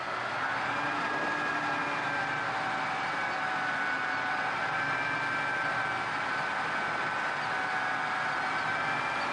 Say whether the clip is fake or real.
real